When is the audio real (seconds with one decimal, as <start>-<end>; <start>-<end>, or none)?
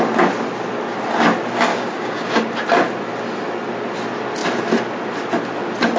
0.0-1.7; 2.4-6.0